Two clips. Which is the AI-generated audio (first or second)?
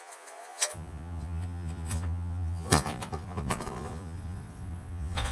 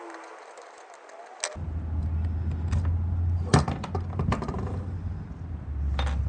first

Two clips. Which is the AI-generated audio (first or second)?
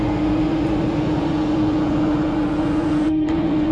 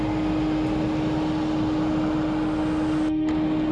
first